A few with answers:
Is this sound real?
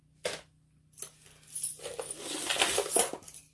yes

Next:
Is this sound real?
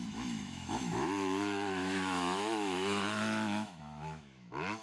no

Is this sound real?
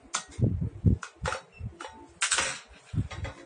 yes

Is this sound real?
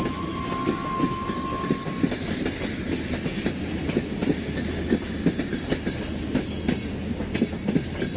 yes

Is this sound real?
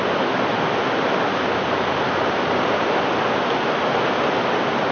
yes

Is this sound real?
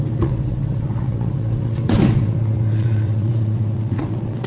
no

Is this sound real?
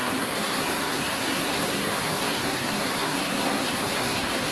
no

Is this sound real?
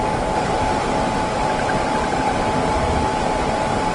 no